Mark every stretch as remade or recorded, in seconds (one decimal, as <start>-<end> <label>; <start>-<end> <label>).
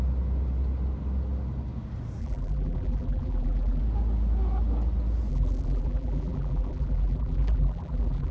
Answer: 0.0-2.2 recorded; 2.2-3.8 remade; 3.8-5.3 recorded; 5.3-8.3 remade